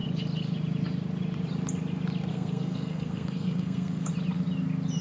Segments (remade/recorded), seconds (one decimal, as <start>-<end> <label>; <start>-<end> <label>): 0.0-2.3 recorded; 2.3-4.1 remade; 4.1-5.0 recorded